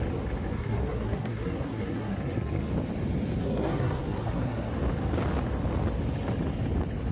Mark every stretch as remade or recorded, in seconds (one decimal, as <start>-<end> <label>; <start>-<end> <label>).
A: 0.0-0.5 recorded; 0.5-2.7 remade; 2.7-3.4 recorded; 3.4-4.7 remade; 4.7-7.1 recorded